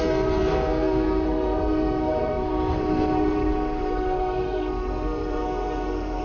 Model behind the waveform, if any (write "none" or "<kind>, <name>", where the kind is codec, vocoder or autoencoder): codec, SNAC